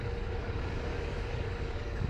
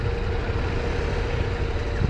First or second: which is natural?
second